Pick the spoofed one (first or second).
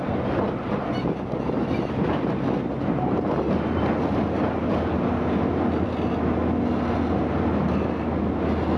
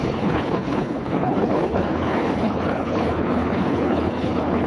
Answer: second